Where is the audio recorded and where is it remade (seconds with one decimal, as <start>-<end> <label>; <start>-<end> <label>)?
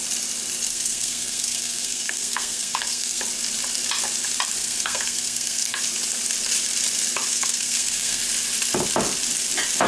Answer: 0.0-0.7 recorded; 0.7-3.2 remade; 3.2-4.6 recorded; 4.6-5.8 remade; 5.8-7.3 recorded; 7.3-8.2 remade; 8.2-9.9 recorded